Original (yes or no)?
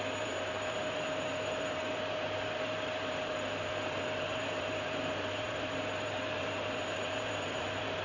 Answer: no